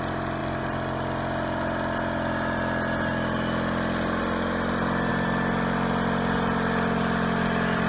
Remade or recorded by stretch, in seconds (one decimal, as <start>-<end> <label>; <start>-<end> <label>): 0.0-7.9 recorded